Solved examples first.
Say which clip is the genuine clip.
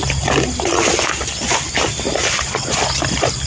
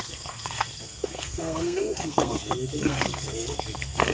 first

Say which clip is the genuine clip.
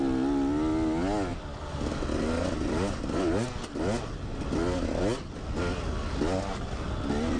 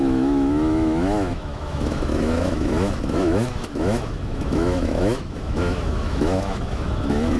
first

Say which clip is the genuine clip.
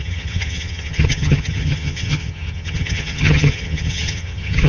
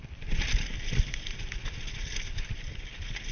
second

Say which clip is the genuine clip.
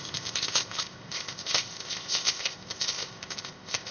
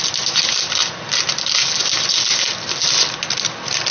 second